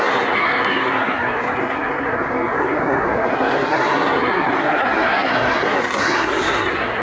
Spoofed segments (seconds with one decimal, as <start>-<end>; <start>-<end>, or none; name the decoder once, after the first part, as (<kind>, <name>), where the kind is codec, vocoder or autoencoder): 0.0-7.0 (codec, SNAC)